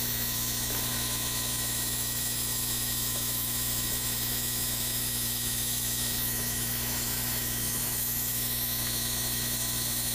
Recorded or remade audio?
remade